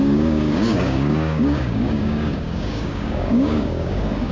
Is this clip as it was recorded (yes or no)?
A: no